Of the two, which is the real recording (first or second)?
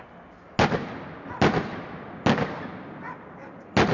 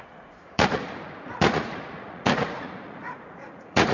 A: first